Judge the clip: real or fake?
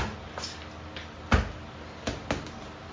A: real